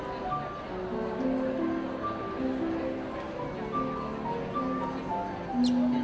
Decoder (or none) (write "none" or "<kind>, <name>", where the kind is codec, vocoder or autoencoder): none